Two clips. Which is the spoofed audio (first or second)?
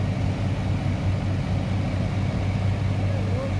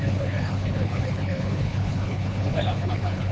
second